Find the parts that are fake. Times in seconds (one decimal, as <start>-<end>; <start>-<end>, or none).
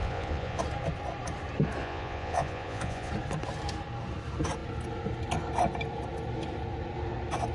0.0-0.6; 1.8-3.1